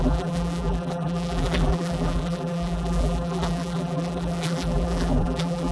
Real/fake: fake